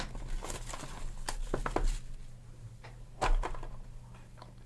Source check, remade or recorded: recorded